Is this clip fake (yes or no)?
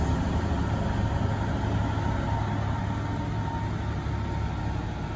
no